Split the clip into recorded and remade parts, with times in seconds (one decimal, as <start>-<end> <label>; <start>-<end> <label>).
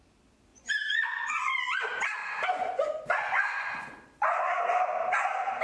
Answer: 0.0-0.5 recorded; 0.5-1.8 remade; 1.8-2.2 recorded; 2.2-4.8 remade; 4.8-5.6 recorded